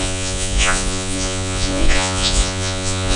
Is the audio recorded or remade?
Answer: remade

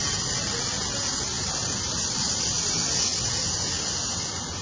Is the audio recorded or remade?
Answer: recorded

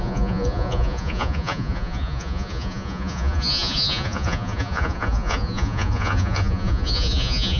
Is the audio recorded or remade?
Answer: remade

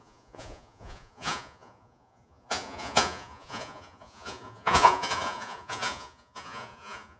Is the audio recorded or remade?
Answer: remade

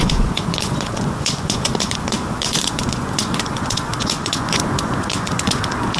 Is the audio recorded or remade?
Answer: remade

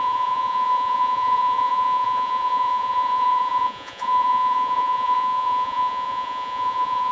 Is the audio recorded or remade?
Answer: remade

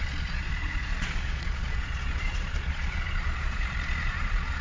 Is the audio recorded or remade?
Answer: remade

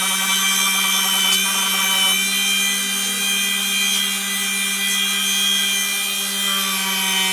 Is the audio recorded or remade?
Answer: recorded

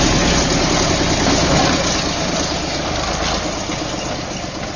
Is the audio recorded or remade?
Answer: recorded